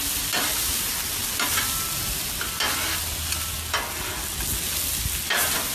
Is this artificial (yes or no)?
no